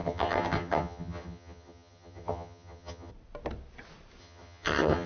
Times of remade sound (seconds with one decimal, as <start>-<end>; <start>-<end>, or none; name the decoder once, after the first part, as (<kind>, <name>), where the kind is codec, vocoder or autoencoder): 0.0-3.1 (vocoder, HiFi-GAN); 4.2-5.1